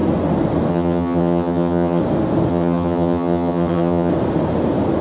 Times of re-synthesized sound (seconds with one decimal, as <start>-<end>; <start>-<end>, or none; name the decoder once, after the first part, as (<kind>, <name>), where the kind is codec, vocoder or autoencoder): 0.7-2.0 (vocoder, HiFi-GAN); 2.5-4.1